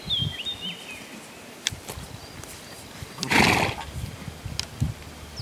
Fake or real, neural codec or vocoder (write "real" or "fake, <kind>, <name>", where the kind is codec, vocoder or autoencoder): real